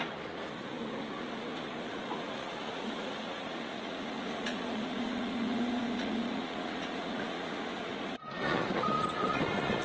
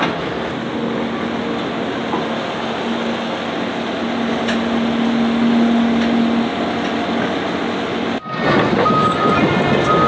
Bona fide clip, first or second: second